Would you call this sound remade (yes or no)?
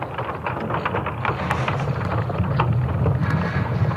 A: no